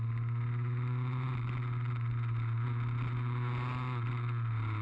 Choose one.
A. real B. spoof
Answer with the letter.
A